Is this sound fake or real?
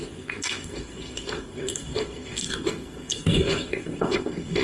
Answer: fake